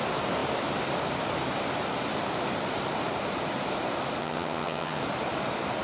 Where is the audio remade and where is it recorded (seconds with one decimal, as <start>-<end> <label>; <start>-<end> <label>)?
0.0-4.2 recorded; 4.2-5.0 remade; 5.0-5.8 recorded